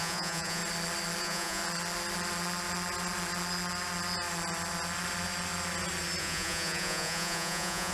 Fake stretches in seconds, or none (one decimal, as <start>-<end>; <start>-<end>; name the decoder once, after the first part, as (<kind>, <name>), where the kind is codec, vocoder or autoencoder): 0.0-0.6 (vocoder, Vocos); 1.2-1.6; 6.2-7.9